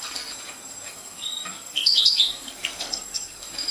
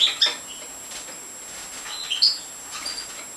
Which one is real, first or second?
second